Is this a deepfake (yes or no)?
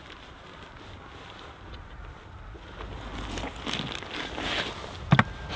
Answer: no